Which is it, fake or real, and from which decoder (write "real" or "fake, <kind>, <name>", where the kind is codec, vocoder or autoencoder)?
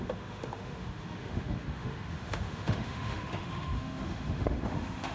fake, autoencoder, DAC-VAE